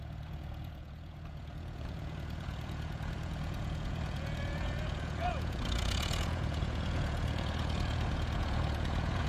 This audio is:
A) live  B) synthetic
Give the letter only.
B